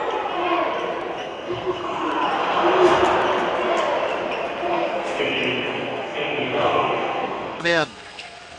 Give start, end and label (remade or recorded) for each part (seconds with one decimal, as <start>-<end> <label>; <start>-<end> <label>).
0.0-1.2 recorded; 1.2-2.0 remade; 2.0-2.4 recorded; 2.4-3.0 remade; 3.0-4.7 recorded; 4.7-8.6 remade